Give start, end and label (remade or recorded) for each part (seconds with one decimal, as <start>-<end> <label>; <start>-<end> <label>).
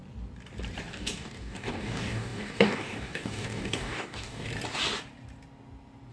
0.0-0.9 recorded; 0.9-4.5 remade; 4.5-6.1 recorded